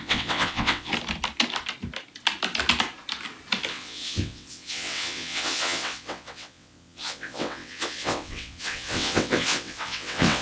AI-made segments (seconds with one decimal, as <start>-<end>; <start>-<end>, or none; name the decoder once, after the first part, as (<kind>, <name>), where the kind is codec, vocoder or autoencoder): 0.0-0.9 (vocoder, WaveNeXt); 3.7-10.4